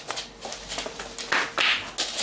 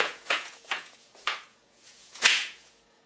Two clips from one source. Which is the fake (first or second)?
second